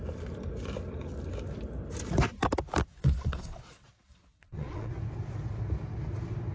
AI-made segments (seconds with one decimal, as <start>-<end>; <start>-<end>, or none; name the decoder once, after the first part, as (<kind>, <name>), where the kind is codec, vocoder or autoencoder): 3.0-4.9 (vocoder, WaveNeXt)